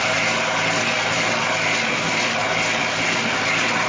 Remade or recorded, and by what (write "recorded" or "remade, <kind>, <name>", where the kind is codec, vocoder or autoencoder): recorded